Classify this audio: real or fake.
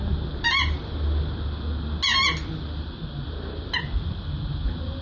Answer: real